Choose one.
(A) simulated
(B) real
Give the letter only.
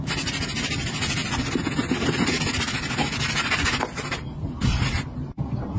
B